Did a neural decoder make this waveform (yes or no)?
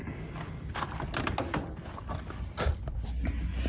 no